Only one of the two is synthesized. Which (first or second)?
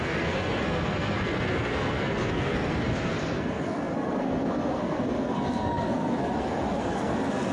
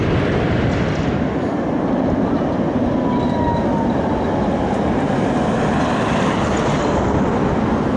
first